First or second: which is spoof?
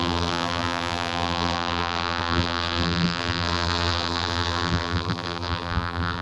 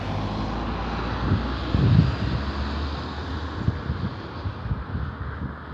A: first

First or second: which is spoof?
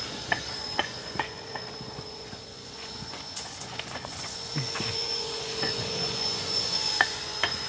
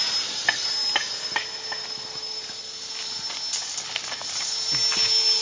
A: first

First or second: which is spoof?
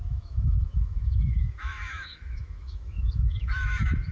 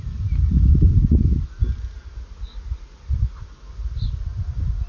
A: first